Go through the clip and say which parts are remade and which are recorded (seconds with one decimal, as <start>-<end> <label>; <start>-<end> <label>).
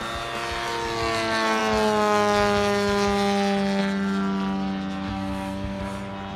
0.0-5.1 recorded; 5.1-5.8 remade; 5.8-6.4 recorded